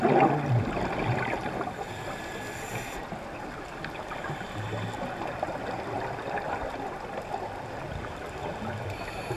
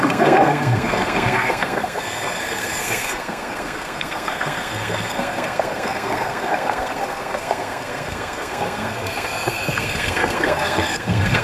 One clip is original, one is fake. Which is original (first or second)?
first